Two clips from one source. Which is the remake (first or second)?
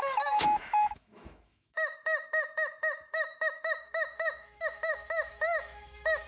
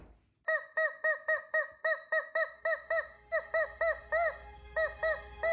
first